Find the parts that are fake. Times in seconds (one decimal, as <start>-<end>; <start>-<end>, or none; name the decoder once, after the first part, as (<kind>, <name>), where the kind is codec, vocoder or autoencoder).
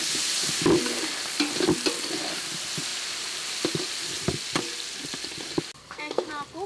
5.8-6.3 (codec, SNAC)